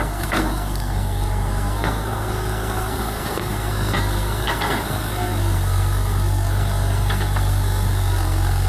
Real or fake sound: fake